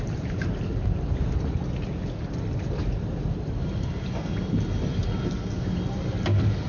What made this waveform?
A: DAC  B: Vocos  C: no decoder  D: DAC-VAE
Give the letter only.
C